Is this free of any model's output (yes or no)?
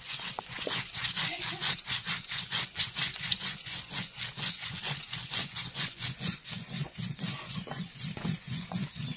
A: no